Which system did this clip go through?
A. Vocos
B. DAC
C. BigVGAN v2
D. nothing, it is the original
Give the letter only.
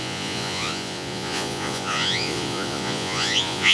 A